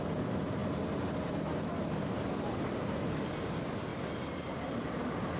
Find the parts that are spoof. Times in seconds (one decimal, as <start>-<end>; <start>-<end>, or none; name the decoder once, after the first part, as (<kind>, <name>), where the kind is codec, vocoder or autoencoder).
0.0-0.6 (vocoder, BigVGAN v2); 3.1-3.9; 4.5-5.4